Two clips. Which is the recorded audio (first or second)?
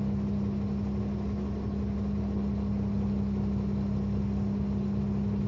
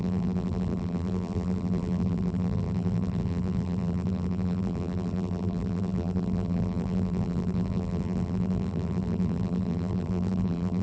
first